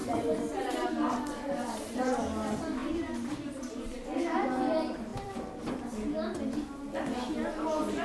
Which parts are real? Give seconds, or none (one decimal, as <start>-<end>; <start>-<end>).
0.9-5.1; 5.8-8.0